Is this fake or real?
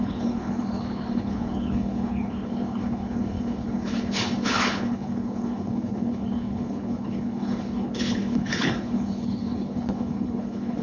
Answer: fake